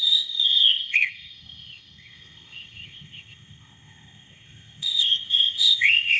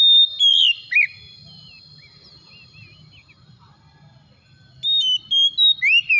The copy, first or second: first